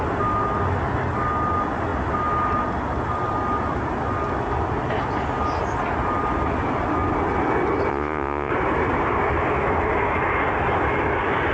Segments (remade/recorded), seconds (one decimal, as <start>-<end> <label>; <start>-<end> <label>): 0.0-7.9 recorded; 7.9-8.5 remade; 8.5-11.5 recorded